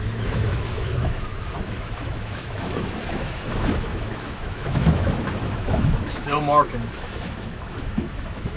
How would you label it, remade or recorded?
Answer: remade